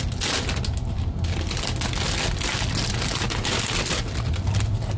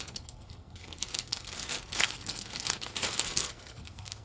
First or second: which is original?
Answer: first